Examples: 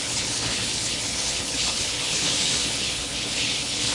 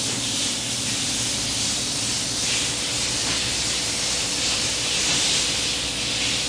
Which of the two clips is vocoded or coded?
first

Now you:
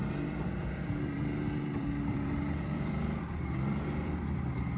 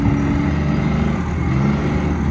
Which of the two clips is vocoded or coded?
first